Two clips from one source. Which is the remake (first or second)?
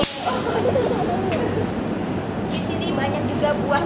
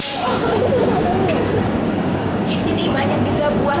second